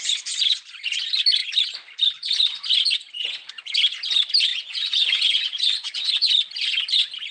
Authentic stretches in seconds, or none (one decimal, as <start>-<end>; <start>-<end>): 0.0-4.5; 6.3-7.3